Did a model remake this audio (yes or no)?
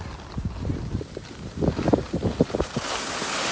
no